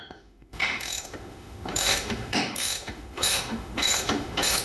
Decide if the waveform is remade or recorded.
remade